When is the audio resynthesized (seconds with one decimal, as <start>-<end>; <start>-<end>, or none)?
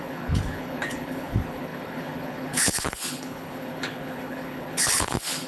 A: 0.0-5.5